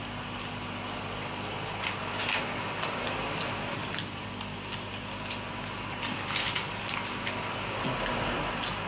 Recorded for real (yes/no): yes